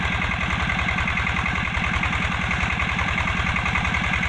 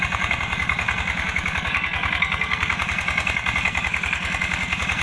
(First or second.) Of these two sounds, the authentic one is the first